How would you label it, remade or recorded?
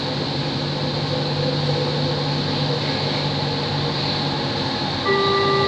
recorded